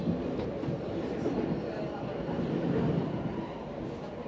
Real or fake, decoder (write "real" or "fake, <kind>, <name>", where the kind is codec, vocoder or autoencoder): real